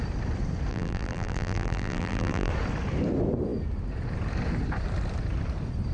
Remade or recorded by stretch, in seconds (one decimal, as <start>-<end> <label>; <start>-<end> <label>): 0.0-0.7 recorded; 0.7-2.5 remade; 2.5-5.9 recorded